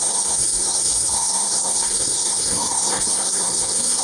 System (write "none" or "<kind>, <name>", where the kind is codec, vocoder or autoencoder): codec, SNAC